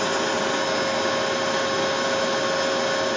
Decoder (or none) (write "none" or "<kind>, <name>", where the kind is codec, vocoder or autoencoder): none